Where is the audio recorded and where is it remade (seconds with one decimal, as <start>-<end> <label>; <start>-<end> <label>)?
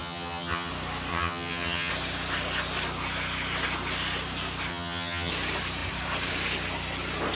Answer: 0.0-0.7 remade; 0.7-1.1 recorded; 1.1-1.9 remade; 1.9-4.7 recorded; 4.7-5.3 remade; 5.3-7.3 recorded